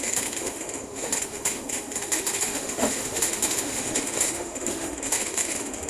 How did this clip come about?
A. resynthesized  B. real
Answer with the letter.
A